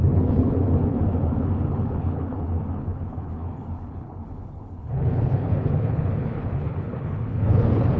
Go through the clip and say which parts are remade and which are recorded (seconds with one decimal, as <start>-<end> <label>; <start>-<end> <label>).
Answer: 0.0-8.0 remade